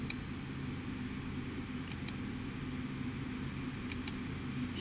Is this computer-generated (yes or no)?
no